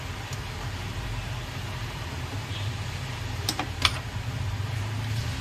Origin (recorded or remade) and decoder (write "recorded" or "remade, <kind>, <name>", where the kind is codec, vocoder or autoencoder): remade, vocoder, BigVGAN v2